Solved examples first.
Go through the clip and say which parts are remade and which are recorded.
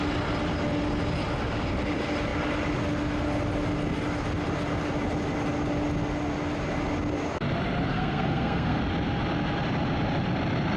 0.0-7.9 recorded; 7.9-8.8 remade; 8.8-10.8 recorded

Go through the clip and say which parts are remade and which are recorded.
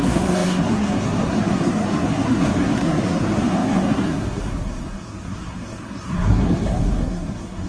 0.0-7.7 remade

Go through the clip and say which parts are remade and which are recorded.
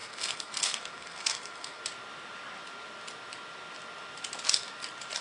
0.0-1.8 remade; 1.8-5.2 recorded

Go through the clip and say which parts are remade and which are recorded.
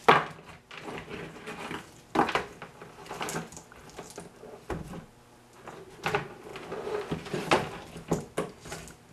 0.0-9.1 recorded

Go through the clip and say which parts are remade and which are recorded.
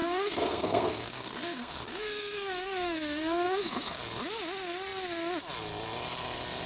0.0-4.0 remade; 4.0-6.7 recorded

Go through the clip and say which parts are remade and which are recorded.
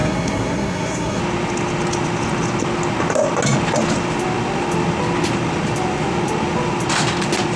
0.0-1.2 remade; 1.2-7.6 recorded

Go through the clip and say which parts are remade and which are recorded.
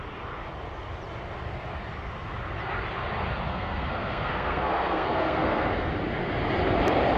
0.0-3.5 recorded; 3.5-5.9 remade; 5.9-7.2 recorded